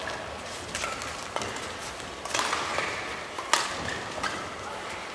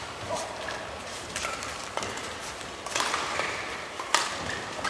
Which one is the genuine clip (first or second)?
first